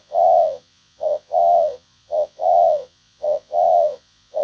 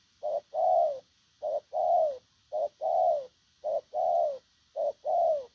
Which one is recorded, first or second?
second